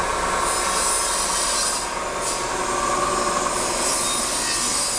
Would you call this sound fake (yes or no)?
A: no